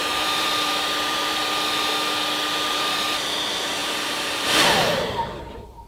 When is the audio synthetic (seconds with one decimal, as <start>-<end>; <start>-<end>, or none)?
0.0-1.4; 2.7-5.9